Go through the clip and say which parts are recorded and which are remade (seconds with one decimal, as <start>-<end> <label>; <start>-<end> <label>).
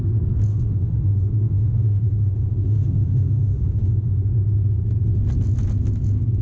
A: 0.0-0.5 recorded; 0.5-4.3 remade; 4.3-6.4 recorded